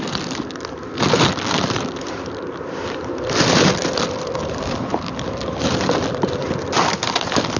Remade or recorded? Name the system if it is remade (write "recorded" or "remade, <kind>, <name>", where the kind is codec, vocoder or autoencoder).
recorded